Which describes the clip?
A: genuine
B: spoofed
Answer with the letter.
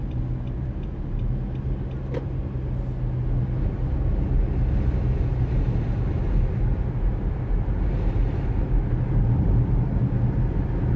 A